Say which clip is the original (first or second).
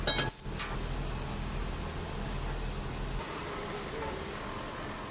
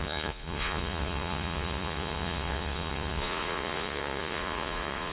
first